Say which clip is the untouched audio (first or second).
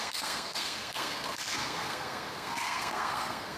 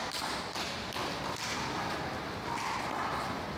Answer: second